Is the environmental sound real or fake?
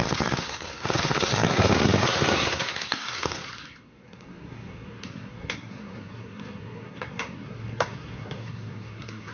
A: fake